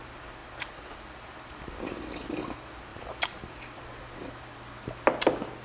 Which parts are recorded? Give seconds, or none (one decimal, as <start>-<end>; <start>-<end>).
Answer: 0.0-0.4; 1.5-2.9; 3.8-5.6